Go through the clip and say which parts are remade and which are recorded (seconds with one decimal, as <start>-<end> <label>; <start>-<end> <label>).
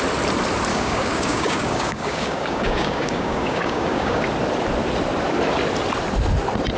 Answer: 0.0-0.7 recorded; 0.7-4.2 remade; 4.2-6.8 recorded